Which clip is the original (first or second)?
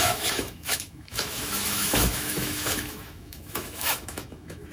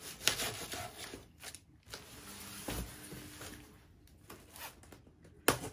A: second